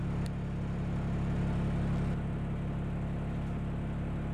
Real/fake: real